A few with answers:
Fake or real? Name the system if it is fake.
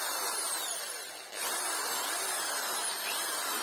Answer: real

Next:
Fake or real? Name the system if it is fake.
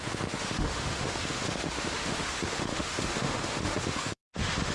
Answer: fake, autoencoder, DAC-VAE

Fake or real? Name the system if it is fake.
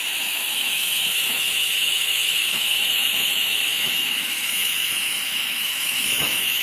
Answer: fake, autoencoder, DAC-VAE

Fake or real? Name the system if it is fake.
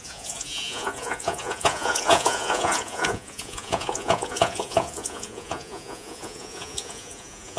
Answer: fake, vocoder, Vocos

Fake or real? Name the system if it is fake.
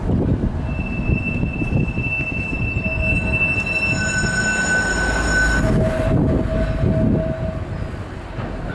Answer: real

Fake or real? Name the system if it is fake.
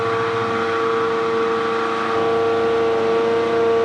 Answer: real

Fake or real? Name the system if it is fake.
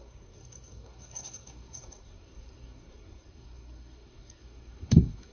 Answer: fake, codec, SNAC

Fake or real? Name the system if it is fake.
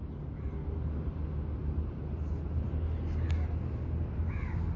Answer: real